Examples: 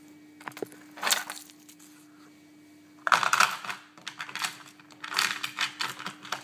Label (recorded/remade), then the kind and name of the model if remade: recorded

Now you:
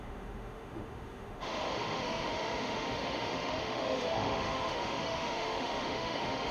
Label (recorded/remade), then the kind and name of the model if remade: remade, autoencoder, DAC-VAE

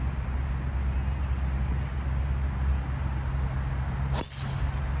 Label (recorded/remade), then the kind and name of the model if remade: recorded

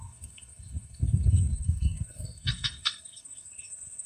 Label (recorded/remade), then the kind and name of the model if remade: remade, codec, SNAC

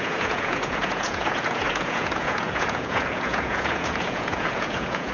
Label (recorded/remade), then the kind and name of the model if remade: remade, vocoder, Vocos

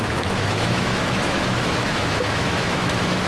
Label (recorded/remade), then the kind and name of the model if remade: remade, autoencoder, DAC-VAE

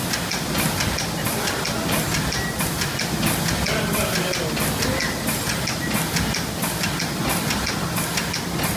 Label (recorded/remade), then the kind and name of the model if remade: recorded